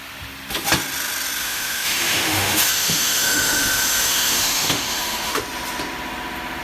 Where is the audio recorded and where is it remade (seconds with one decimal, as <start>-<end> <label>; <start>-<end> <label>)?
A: 0.0-1.4 recorded; 1.4-5.4 remade; 5.4-6.6 recorded